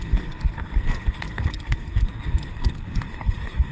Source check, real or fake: fake